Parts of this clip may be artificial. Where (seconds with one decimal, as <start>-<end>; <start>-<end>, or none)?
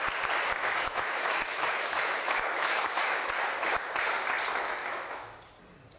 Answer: 0.6-3.3; 4.8-5.4